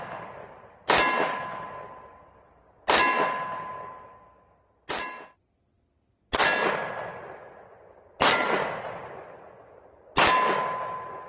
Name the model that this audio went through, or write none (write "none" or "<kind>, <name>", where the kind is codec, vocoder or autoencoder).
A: none